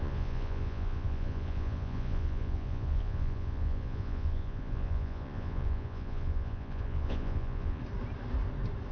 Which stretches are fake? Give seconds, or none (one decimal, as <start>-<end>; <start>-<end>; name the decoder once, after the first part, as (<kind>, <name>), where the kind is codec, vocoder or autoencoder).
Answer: 0.0-7.8 (vocoder, Vocos)